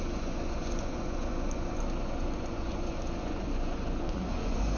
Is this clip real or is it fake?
fake